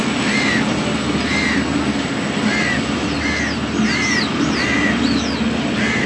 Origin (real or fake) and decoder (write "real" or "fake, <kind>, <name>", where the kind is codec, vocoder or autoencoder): real